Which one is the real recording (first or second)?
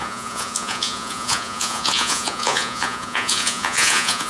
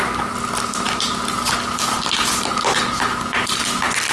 second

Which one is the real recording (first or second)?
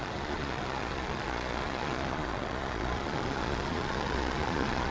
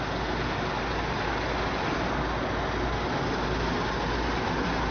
second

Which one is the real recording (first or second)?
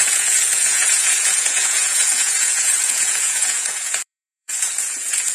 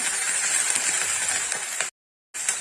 second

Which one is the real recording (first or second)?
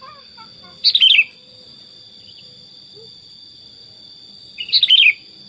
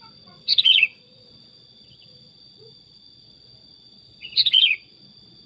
first